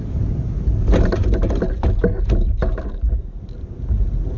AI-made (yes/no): no